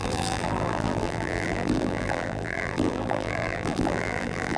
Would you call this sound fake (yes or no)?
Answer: yes